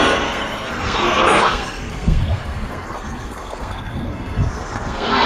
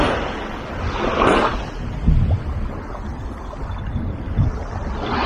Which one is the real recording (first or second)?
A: second